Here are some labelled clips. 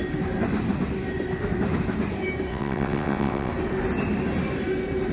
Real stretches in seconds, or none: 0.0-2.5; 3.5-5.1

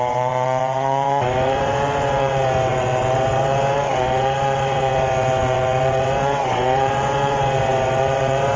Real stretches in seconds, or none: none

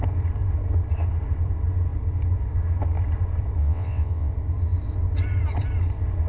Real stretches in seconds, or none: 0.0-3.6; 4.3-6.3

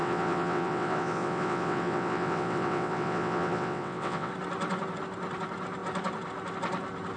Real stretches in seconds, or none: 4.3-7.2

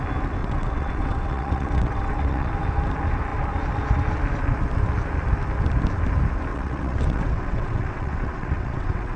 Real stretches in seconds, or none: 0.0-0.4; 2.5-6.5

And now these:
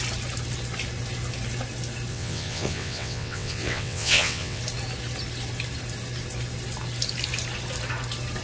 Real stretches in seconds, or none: 0.0-2.1; 4.6-8.4